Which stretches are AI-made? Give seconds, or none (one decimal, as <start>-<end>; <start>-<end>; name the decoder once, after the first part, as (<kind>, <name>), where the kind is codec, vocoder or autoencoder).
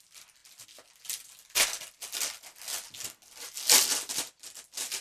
none